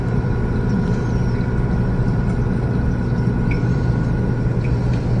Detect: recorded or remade recorded